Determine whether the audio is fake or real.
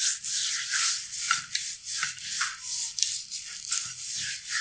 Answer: real